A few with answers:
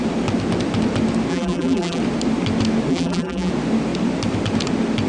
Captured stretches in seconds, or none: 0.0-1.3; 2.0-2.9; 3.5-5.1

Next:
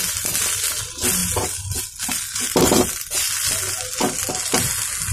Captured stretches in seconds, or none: 0.0-5.1

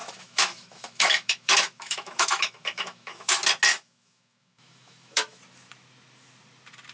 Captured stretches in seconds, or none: 3.3-3.7; 5.4-6.9

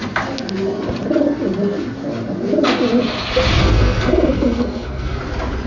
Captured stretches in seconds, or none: 0.0-3.6; 5.2-5.7

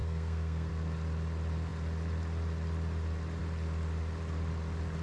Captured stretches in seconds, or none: 0.7-5.0